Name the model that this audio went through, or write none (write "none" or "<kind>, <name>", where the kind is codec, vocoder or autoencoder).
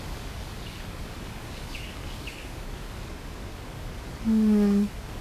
codec, DAC